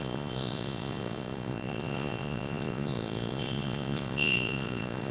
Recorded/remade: remade